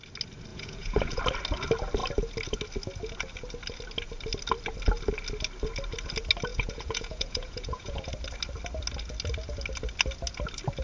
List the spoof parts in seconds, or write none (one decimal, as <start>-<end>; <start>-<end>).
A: 0.5-1.2; 6.5-8.1